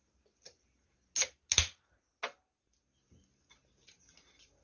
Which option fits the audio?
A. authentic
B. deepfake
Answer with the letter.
A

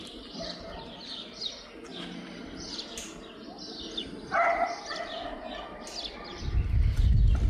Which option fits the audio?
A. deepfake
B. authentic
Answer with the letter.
B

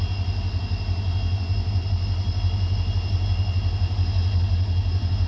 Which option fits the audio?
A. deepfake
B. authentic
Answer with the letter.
B